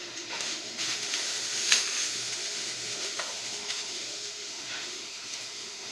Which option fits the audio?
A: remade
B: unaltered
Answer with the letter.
A